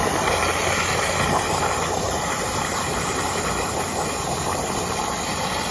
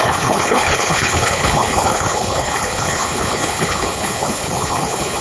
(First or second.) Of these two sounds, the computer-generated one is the second